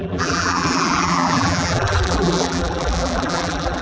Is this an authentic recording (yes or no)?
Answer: no